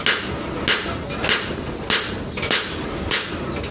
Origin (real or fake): real